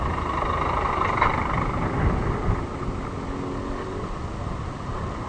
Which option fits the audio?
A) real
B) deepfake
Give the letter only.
A